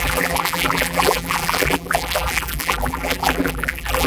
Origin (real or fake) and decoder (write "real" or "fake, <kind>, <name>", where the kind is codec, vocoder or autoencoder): fake, vocoder, BigVGAN v2